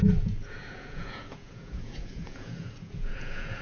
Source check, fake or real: fake